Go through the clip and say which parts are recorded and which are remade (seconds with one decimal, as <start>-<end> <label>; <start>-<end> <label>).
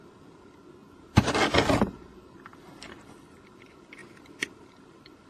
0.0-0.8 recorded; 0.8-1.3 remade; 1.3-4.0 recorded; 4.0-5.3 remade